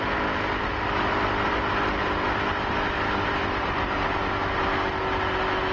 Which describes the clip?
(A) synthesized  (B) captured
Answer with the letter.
B